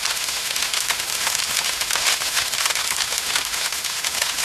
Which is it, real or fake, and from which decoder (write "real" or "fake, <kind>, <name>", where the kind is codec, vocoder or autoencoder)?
fake, autoencoder, DAC-VAE